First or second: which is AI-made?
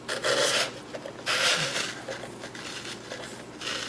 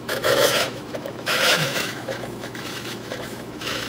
second